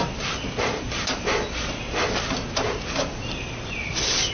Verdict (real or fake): real